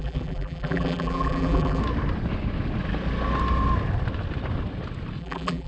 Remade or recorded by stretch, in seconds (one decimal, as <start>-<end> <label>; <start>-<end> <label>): 0.0-1.8 remade; 1.8-5.2 recorded; 5.2-5.7 remade